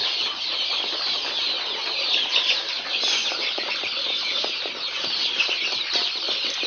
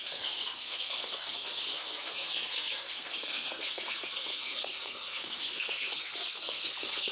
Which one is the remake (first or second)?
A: second